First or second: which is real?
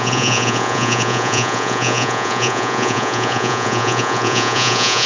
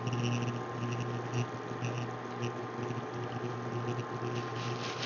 second